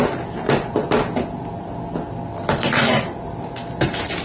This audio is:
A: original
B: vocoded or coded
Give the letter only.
A